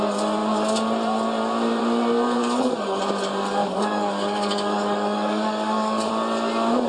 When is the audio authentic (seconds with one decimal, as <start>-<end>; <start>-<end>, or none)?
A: 0.0-2.4; 3.0-3.6; 6.1-6.9